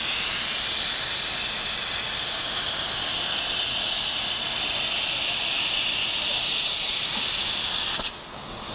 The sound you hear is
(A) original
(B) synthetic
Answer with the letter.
A